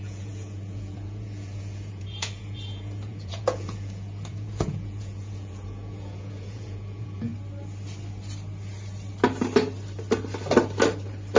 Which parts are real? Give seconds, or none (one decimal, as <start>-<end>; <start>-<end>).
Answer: 7.3-11.4